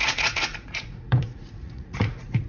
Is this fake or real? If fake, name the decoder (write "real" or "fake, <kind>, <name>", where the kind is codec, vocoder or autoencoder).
fake, vocoder, Vocos